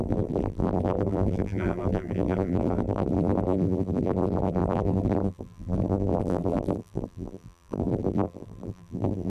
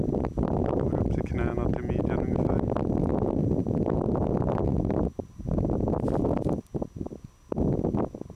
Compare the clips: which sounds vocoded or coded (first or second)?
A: first